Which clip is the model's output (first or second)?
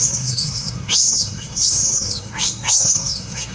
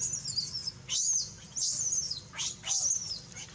first